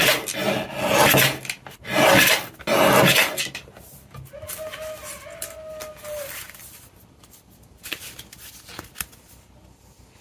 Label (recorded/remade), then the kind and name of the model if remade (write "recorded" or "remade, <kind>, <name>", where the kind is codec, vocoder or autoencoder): recorded